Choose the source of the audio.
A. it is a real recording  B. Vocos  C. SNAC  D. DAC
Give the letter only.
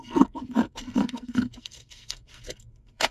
C